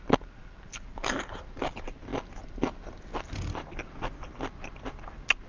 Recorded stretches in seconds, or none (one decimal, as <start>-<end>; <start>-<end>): 0.0-5.5